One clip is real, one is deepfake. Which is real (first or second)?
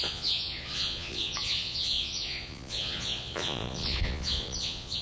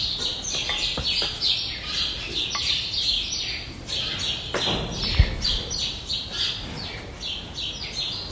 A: second